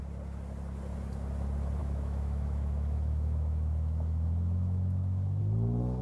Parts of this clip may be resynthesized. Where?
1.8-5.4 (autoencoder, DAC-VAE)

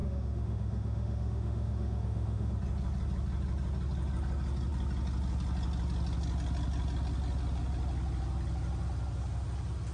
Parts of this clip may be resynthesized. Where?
0.0-2.5 (autoencoder, DAC-VAE)

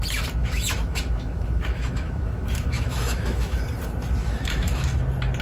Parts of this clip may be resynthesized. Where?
0.4-3.6 (autoencoder, DAC-VAE); 4.2-4.8

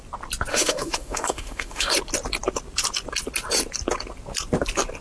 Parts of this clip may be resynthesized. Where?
0.5-1.9 (autoencoder, DAC-VAE)

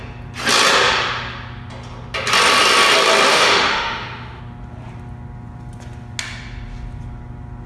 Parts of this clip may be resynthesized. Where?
3.3-4.4 (autoencoder, DAC-VAE)

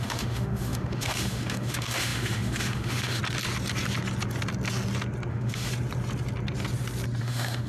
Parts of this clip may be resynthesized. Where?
0.0-3.2 (autoencoder, DAC-VAE); 5.3-5.7; 7.2-7.7

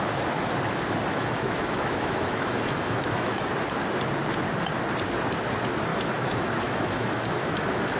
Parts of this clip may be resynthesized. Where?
1.1-3.5 (autoencoder, DAC-VAE); 5.9-8.0

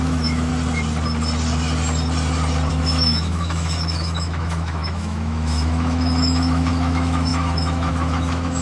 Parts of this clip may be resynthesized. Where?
0.0-0.5 (autoencoder, DAC-VAE); 2.7-8.6